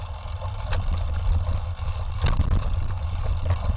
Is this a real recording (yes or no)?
yes